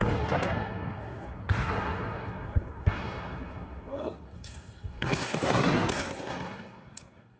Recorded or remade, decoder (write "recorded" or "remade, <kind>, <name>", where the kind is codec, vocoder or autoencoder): remade, codec, SNAC